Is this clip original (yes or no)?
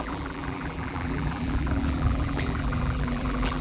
no